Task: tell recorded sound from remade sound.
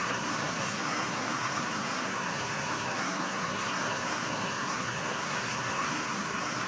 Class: remade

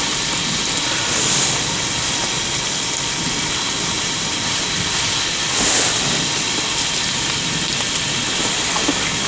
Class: recorded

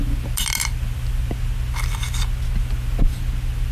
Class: recorded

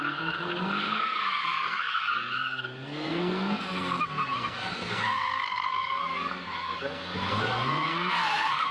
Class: remade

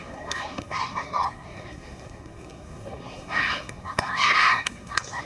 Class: remade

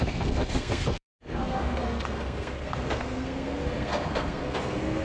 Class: remade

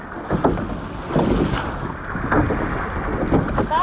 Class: recorded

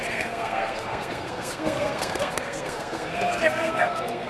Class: remade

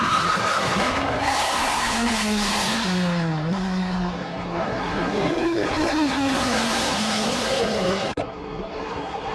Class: remade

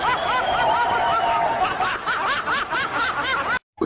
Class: recorded